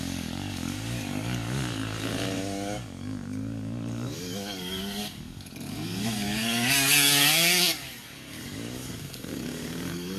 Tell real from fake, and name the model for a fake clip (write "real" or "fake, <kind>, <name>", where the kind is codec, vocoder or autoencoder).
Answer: fake, codec, DAC